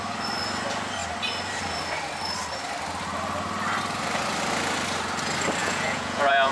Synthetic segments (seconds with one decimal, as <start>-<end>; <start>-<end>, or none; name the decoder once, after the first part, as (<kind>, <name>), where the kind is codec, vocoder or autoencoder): 5.6-6.5 (vocoder, Vocos)